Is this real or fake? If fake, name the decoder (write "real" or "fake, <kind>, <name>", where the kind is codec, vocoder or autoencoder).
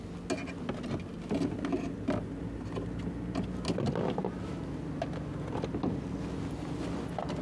real